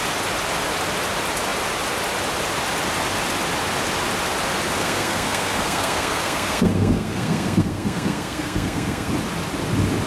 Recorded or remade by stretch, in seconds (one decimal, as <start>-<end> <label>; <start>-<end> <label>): 0.0-4.8 recorded; 4.8-9.1 remade; 9.1-10.1 recorded

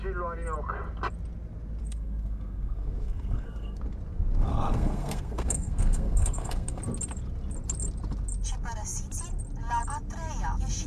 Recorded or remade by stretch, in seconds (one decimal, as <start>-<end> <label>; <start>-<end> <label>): 0.0-1.8 recorded; 1.8-3.8 remade; 3.8-4.5 recorded; 4.5-6.8 remade; 6.8-10.9 recorded